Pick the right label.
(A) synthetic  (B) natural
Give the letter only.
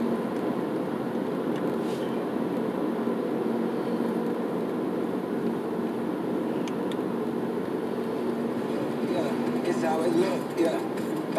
B